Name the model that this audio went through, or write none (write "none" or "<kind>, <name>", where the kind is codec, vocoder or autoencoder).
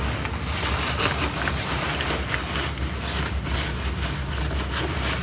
none